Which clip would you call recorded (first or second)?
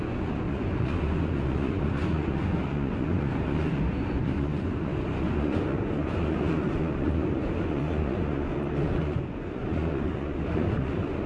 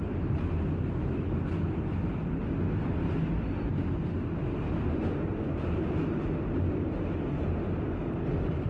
second